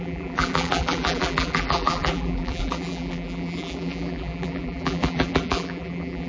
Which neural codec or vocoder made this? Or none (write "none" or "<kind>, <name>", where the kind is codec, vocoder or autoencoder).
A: vocoder, BigVGAN v2